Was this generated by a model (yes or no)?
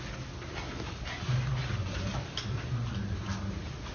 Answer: no